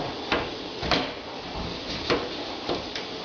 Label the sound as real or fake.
real